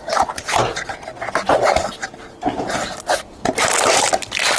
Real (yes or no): yes